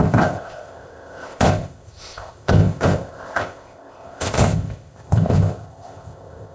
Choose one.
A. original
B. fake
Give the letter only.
B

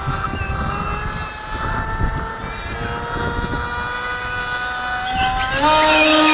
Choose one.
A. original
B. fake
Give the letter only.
A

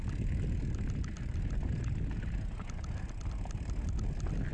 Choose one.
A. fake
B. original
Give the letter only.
B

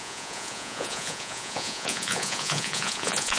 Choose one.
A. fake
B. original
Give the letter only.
A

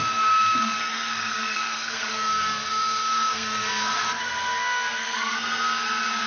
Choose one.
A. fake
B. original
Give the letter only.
A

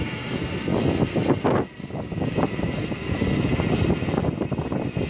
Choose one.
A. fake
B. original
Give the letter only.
B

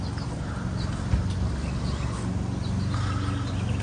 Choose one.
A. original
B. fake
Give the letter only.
A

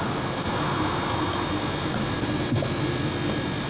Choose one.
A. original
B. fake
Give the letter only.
A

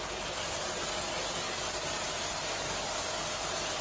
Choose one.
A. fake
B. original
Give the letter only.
B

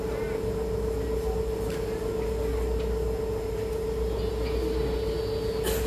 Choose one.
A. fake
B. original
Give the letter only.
B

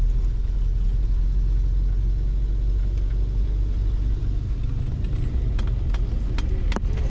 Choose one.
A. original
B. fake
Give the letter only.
A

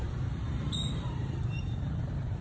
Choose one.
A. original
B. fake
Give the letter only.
A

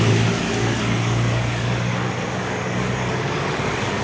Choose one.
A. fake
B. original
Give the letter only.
A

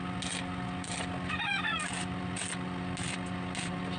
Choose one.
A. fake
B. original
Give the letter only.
B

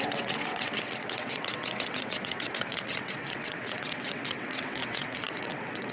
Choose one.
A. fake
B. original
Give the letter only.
A